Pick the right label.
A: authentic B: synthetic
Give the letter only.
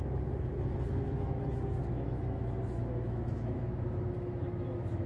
B